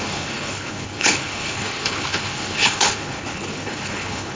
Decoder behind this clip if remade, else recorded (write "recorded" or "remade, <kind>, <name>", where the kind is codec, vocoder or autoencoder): remade, codec, HILCodec